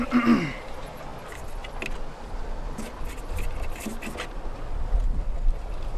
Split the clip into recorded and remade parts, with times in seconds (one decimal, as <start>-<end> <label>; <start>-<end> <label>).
0.0-6.0 recorded